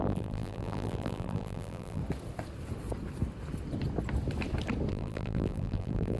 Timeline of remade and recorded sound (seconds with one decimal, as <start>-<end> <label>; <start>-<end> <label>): 0.0-2.0 remade; 2.0-4.9 recorded; 4.9-6.2 remade